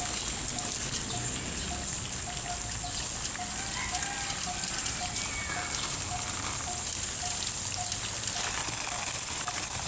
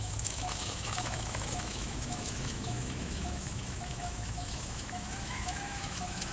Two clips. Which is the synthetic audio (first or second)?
second